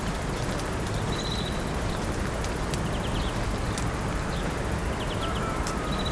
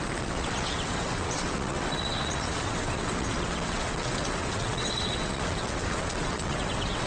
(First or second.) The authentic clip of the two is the first